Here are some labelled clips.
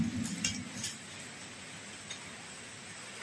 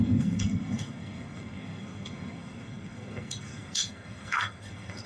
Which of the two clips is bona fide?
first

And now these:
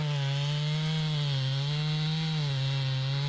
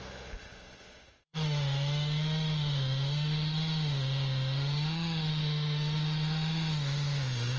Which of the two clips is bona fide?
first